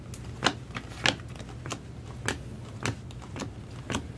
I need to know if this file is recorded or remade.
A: recorded